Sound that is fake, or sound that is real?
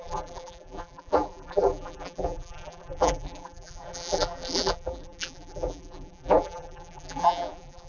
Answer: fake